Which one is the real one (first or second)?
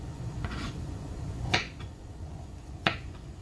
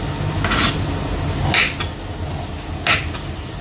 second